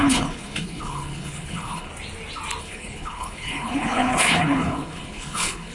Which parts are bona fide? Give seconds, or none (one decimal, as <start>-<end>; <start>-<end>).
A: 1.9-2.6